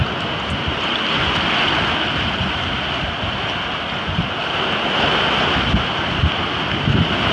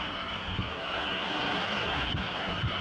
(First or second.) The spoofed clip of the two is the second